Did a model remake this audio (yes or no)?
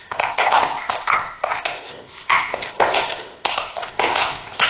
yes